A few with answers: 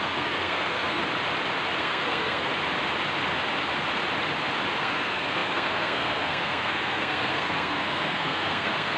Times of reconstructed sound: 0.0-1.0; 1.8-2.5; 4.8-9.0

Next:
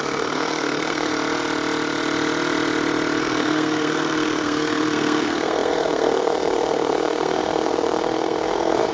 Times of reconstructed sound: 0.0-1.1; 3.2-8.9

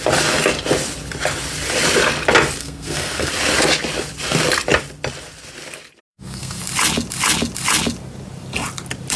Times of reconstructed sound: 2.6-3.3; 6.1-6.6

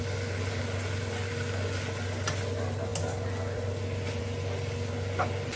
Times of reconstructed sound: none

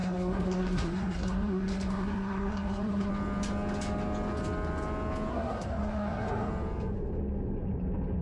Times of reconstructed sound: 0.0-3.1; 5.3-6.5

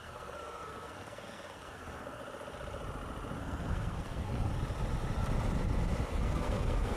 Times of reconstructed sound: 0.0-2.2; 3.4-4.5; 6.1-7.0

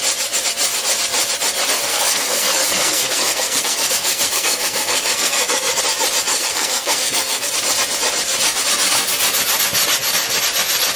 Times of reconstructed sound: 1.9-5.8; 6.3-7.5